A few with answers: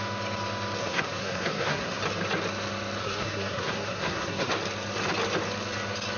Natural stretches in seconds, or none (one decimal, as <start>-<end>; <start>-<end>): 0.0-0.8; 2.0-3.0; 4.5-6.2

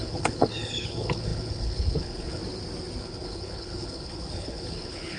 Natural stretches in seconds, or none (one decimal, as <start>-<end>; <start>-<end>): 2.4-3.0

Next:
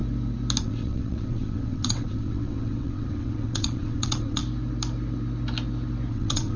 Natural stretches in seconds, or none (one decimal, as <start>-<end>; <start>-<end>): 0.0-0.6; 4.4-6.1

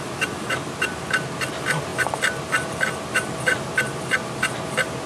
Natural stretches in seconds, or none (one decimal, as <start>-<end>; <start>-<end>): 0.0-5.1

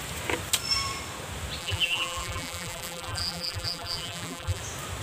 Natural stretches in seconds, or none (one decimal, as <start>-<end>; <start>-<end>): 0.0-1.6; 4.6-5.0